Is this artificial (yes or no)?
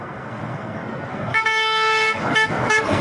yes